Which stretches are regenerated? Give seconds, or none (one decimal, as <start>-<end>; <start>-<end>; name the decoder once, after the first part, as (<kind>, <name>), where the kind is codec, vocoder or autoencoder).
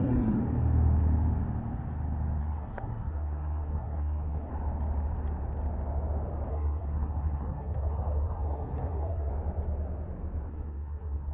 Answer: 0.0-0.4 (codec, SNAC); 2.4-4.5; 6.5-9.3; 10.5-11.3